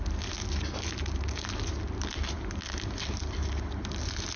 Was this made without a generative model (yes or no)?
yes